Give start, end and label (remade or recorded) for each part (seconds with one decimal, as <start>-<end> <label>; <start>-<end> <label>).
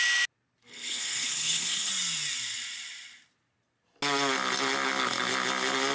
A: 0.0-0.7 recorded; 0.7-1.9 remade; 1.9-5.9 recorded